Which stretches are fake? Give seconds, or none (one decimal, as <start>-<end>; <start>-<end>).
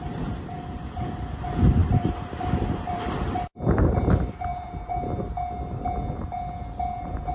1.8-4.0